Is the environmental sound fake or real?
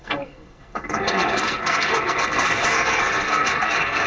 fake